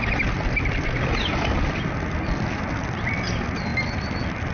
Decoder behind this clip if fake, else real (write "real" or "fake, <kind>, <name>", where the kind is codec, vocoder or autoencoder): real